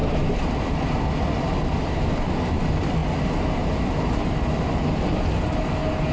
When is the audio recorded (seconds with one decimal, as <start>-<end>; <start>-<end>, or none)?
0.0-6.1